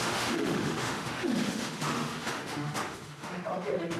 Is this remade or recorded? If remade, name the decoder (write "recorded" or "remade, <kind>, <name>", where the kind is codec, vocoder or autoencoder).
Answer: remade, autoencoder, DAC-VAE